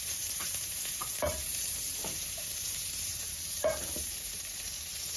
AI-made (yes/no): yes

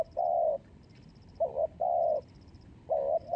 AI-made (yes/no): no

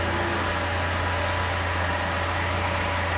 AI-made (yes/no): no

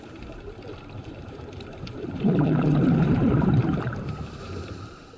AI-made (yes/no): yes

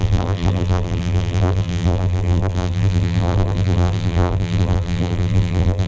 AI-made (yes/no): yes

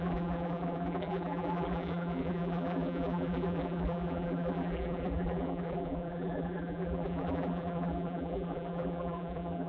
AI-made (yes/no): yes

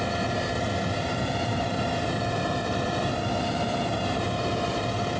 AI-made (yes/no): yes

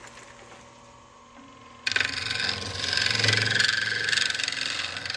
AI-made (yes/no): no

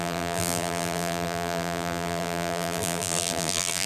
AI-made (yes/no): yes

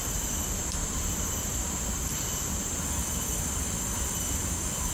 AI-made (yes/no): yes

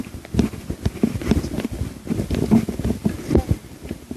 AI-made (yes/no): no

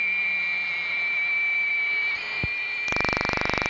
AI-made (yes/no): yes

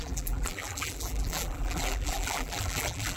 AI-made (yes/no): yes